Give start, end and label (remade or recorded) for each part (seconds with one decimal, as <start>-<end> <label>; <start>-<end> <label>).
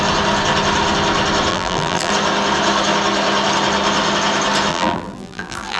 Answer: 0.0-1.5 recorded; 1.5-2.1 remade; 2.1-4.7 recorded; 4.7-5.8 remade